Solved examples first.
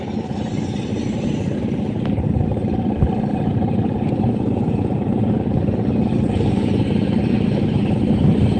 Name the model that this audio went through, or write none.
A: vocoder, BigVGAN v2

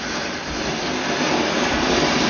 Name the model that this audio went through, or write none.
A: none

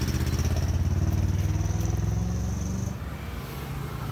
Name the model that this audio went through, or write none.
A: none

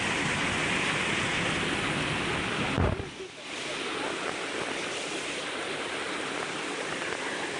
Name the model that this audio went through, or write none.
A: none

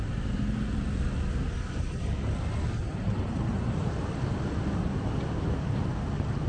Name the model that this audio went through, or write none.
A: none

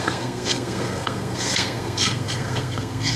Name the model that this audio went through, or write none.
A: codec, SNAC